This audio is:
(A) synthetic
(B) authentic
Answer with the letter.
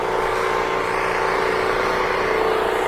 B